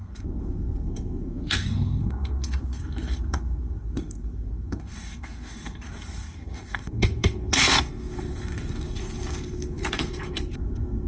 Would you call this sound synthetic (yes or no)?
yes